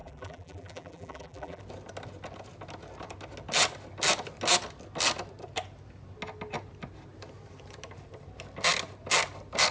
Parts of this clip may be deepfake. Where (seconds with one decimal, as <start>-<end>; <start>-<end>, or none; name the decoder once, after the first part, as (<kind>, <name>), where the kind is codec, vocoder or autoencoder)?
0.0-1.6 (vocoder, BigVGAN v2)